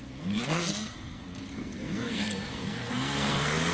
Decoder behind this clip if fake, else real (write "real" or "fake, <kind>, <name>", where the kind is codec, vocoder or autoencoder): fake, codec, SNAC